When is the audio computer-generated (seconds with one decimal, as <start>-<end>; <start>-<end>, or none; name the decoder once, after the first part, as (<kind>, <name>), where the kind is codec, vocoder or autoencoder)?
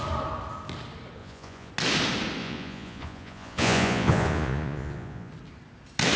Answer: 1.2-1.7 (vocoder, Vocos); 2.4-5.3